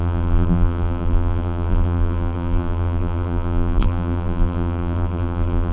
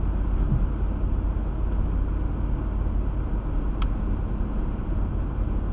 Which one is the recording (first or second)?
second